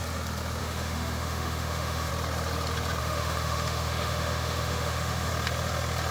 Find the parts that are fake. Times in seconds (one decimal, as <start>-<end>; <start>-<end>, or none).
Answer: 0.6-2.1; 3.0-5.3